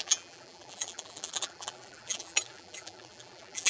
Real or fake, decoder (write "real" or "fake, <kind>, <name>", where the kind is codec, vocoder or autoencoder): fake, vocoder, BigVGAN v2